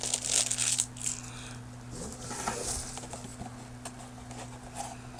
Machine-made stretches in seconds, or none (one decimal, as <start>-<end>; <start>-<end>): none

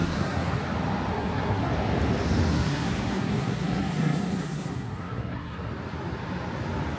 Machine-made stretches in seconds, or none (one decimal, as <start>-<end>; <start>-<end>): 0.0-0.6; 1.1-1.7; 2.5-5.7

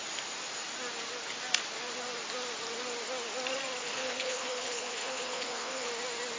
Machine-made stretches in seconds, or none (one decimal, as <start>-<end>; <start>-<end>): 3.8-5.9

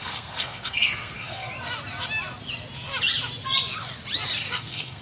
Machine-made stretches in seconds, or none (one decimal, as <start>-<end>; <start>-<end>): 0.0-1.5; 4.5-5.0

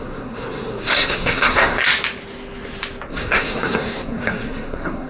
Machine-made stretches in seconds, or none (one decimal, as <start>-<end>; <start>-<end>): 0.0-1.9; 3.1-5.1

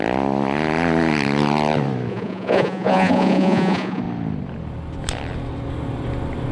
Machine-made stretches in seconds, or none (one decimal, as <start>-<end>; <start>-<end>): 2.1-4.0